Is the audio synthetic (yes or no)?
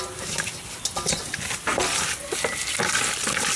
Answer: no